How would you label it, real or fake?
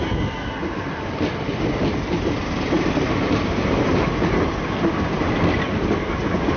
real